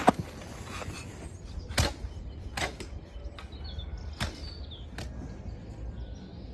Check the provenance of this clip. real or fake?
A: real